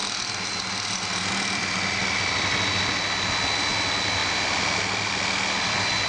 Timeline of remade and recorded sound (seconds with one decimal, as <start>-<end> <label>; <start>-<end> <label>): 0.0-6.1 recorded